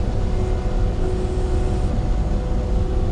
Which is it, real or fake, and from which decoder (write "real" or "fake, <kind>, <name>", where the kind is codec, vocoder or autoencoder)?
real